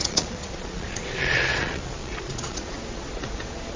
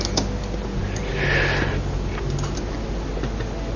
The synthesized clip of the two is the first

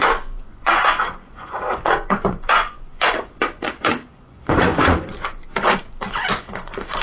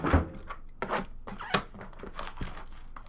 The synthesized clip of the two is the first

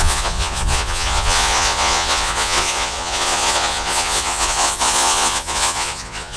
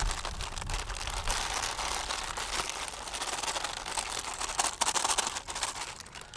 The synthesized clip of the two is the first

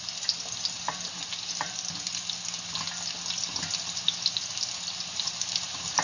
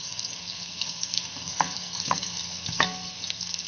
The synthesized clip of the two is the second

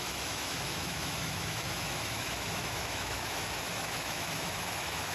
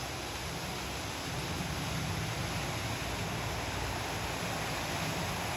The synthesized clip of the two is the first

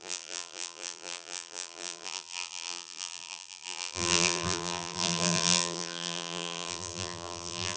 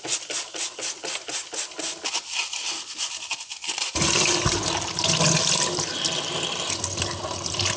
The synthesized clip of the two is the first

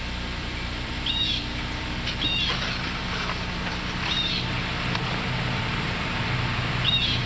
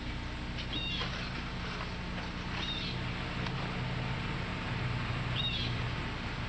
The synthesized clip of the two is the first